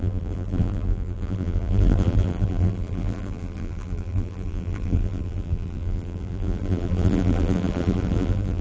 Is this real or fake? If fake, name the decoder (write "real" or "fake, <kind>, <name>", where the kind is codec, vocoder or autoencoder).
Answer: fake, vocoder, BigVGAN v2